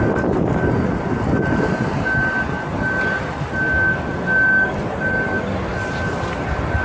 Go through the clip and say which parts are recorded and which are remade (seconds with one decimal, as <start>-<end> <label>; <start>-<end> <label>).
0.0-6.8 recorded